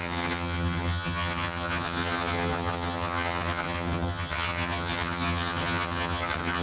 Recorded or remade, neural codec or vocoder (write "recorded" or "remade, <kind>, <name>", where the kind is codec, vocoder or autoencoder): remade, vocoder, HiFi-GAN